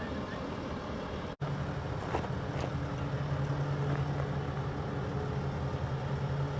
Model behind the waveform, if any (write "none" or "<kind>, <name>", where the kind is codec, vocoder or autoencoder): none